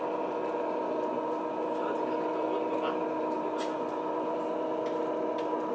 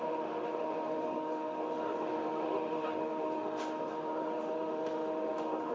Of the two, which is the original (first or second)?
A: first